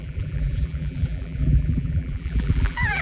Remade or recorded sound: remade